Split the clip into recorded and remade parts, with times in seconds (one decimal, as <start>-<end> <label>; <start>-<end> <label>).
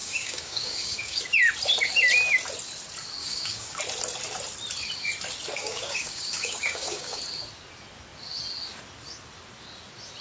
0.0-1.2 remade; 1.2-3.2 recorded; 3.2-3.8 remade; 3.8-5.6 recorded; 5.6-7.2 remade; 7.2-10.2 recorded